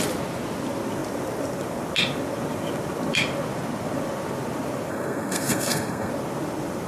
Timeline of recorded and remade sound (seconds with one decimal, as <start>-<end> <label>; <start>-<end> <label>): 0.0-4.9 recorded; 4.9-6.1 remade; 6.1-6.9 recorded